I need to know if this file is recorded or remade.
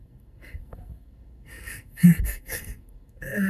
remade